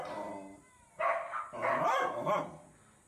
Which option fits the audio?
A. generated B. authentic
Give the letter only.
B